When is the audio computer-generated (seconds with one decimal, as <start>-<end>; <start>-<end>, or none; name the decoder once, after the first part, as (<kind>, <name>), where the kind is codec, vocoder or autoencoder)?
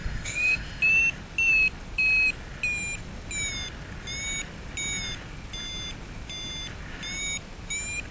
0.0-0.8 (autoencoder, DAC-VAE)